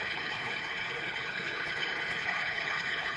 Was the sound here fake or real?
fake